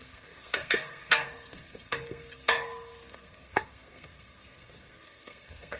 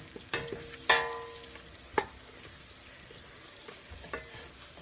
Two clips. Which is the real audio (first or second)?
second